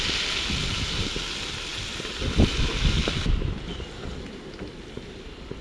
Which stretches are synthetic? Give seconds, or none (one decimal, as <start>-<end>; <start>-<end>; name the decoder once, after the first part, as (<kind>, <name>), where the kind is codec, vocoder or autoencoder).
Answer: none